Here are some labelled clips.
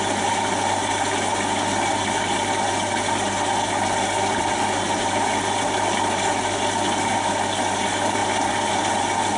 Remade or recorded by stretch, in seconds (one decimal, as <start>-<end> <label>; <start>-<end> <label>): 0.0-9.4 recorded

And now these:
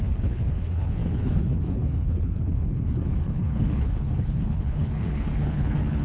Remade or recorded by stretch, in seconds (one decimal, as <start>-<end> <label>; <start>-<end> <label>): 0.0-6.0 remade

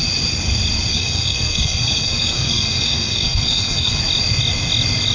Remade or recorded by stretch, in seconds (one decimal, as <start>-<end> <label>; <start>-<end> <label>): 0.0-0.9 recorded; 0.9-4.0 remade; 4.0-5.1 recorded

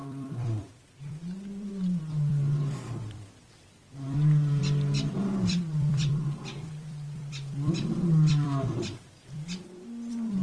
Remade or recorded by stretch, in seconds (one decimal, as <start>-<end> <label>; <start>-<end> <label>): 0.0-4.6 remade; 4.6-5.2 recorded; 5.2-10.4 remade

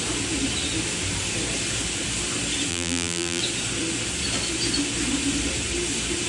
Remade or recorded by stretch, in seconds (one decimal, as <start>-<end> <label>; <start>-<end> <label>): 0.0-2.7 recorded; 2.7-3.4 remade; 3.4-6.3 recorded

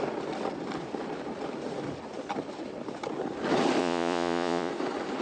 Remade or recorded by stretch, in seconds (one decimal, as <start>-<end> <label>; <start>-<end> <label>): 0.0-3.8 recorded; 3.8-4.7 remade; 4.7-5.2 recorded

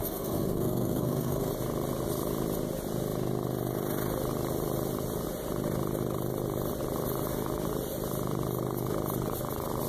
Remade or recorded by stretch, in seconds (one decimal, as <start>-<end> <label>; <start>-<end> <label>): 0.0-1.5 remade; 1.5-9.9 recorded